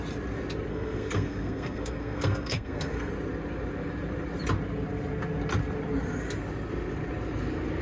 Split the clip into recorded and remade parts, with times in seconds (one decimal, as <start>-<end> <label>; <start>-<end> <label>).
0.0-0.7 recorded; 0.7-3.1 remade; 3.1-7.8 recorded